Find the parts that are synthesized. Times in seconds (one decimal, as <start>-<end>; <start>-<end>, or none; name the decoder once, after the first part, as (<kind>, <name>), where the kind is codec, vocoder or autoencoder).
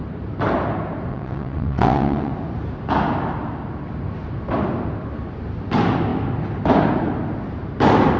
1.1-2.3 (vocoder, WaveNeXt)